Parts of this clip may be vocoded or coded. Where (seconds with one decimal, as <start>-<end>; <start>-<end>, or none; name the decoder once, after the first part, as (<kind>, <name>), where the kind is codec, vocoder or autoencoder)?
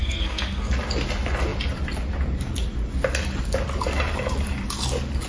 0.0-0.7 (codec, SNAC)